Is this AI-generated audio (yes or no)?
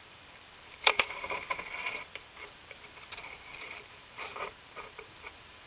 yes